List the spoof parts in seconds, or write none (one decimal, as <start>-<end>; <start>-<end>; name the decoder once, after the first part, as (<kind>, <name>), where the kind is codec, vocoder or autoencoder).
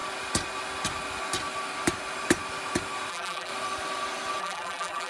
3.1-3.5 (vocoder, BigVGAN v2); 4.4-5.1